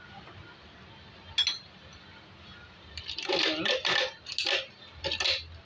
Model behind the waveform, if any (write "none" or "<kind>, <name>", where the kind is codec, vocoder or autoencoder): none